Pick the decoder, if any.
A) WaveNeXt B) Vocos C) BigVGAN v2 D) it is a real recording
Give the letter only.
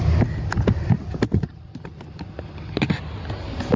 D